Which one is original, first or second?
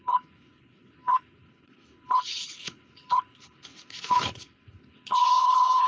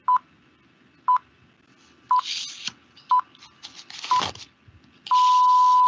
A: second